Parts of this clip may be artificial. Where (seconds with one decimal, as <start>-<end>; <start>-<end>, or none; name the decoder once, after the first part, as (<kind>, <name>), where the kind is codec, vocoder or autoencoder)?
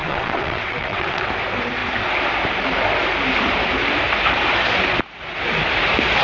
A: 0.0-1.3 (vocoder, WaveNeXt)